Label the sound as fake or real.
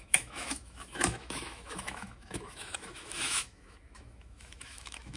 fake